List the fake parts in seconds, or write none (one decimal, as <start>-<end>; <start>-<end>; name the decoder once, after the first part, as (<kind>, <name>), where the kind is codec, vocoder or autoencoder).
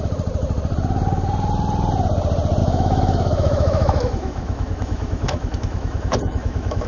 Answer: 2.6-6.9 (autoencoder, DAC-VAE)